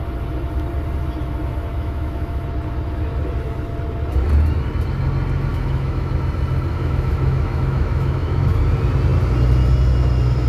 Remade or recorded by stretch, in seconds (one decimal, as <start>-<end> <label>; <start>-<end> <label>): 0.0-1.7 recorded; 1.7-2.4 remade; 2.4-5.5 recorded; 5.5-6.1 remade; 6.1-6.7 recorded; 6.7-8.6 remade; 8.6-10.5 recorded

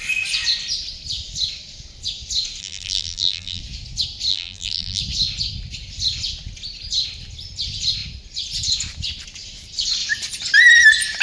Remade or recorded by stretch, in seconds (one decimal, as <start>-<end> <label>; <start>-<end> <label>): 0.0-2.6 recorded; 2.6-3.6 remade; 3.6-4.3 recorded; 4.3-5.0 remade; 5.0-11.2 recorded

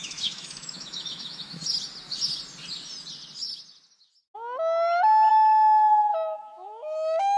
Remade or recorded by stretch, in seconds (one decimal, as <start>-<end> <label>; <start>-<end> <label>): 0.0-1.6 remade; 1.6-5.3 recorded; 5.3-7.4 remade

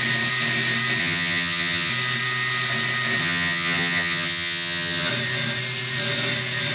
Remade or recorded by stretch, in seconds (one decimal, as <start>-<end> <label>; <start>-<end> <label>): 0.0-1.0 recorded; 1.0-1.9 remade; 1.9-3.2 recorded; 3.2-5.1 remade; 5.1-6.7 recorded

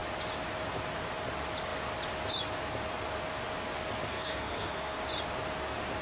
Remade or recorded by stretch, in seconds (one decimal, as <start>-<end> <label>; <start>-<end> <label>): 0.0-4.1 recorded; 4.1-5.0 remade; 5.0-6.0 recorded

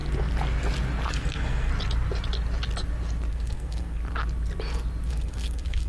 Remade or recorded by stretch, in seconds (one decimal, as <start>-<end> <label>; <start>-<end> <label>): 0.0-1.1 recorded; 1.1-1.7 remade; 1.7-3.3 recorded; 3.3-4.0 remade; 4.0-5.1 recorded; 5.1-5.9 remade

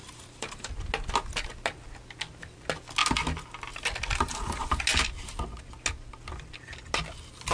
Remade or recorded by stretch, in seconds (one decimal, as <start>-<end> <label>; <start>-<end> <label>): 0.0-0.7 remade; 0.7-7.5 recorded